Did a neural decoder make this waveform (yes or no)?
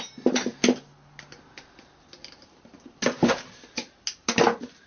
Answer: no